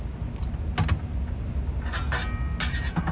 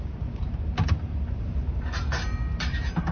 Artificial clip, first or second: second